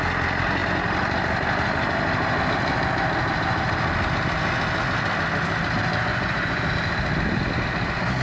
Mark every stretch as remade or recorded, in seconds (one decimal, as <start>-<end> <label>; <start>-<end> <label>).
0.0-6.1 recorded; 6.1-6.6 remade; 6.6-8.2 recorded